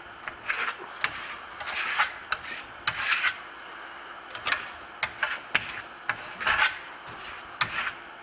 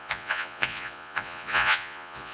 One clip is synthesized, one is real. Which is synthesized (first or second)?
second